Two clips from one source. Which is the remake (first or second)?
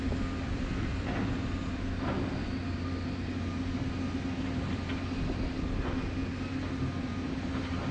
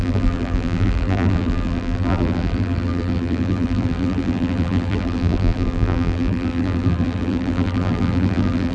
second